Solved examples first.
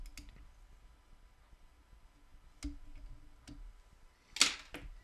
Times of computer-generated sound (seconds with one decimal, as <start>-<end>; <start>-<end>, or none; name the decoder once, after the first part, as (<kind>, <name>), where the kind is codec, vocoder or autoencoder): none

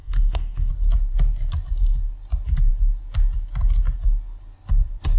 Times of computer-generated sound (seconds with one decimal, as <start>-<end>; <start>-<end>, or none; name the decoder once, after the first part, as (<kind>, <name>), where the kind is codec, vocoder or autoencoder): 0.0-0.7 (codec, SNAC)

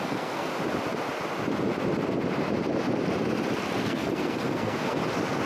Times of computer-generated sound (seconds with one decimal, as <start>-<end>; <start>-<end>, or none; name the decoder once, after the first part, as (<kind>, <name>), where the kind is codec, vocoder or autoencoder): 0.0-0.5 (codec, SNAC); 3.8-5.0

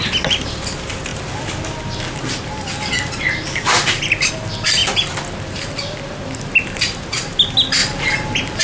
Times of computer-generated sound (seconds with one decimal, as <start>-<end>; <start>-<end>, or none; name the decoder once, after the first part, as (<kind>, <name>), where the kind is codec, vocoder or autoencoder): none

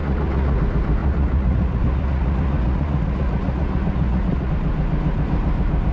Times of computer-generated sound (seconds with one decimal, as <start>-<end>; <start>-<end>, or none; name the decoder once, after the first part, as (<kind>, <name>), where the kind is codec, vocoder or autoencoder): 0.0-0.6 (vocoder, Vocos); 1.0-4.5

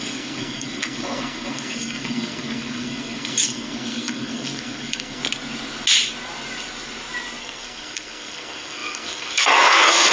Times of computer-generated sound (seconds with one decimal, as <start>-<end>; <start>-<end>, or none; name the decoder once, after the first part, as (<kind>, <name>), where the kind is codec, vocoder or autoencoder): 0.0-5.2 (codec, SNAC); 7.4-10.1

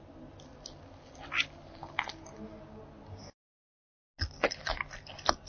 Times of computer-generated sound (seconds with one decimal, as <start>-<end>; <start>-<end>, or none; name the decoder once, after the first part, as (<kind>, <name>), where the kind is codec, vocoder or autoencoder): none

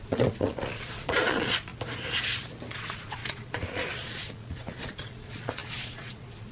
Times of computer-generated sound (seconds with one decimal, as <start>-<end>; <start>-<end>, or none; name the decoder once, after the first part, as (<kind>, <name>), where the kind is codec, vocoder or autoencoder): 0.0-1.7 (vocoder, Vocos); 2.7-6.5